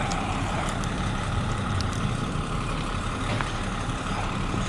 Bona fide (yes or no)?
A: no